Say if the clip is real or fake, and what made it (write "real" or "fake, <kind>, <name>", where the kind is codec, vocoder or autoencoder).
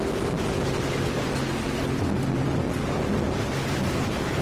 real